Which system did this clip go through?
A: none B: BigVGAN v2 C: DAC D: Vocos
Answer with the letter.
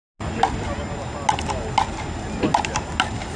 A